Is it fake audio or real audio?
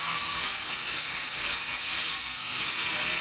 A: fake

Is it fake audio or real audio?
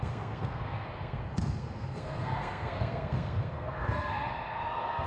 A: fake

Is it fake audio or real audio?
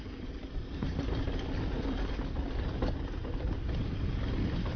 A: real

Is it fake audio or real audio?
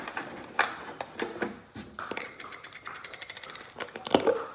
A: real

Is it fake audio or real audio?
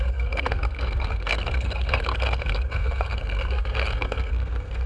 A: fake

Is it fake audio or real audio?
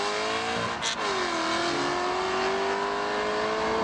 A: real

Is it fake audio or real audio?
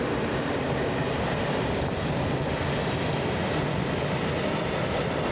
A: real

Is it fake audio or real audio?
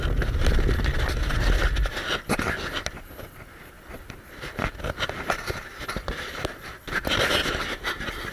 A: real